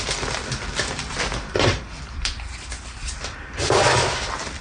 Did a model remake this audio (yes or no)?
no